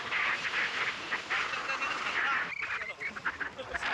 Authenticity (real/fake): real